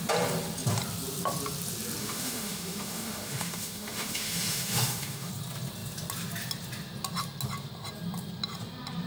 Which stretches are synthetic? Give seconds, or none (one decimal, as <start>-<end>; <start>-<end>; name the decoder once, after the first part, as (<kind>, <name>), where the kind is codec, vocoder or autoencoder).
2.0-5.3 (autoencoder, DAC-VAE)